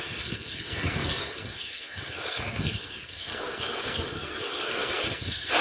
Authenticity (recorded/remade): remade